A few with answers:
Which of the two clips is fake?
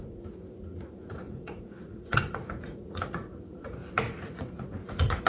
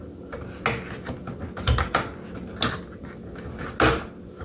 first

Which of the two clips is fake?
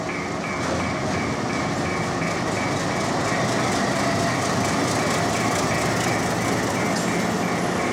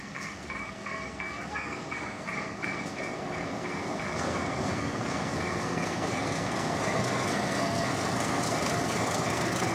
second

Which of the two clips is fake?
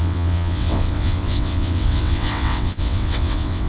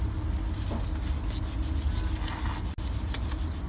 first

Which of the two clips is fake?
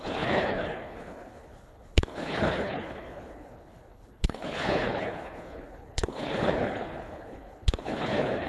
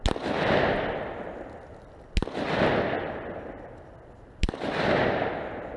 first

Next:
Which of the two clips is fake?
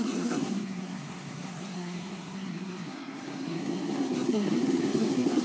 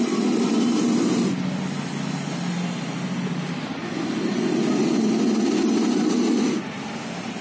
first